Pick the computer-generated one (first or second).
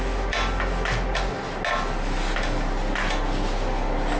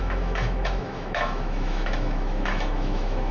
second